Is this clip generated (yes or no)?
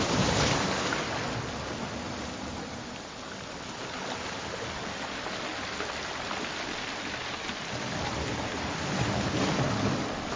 no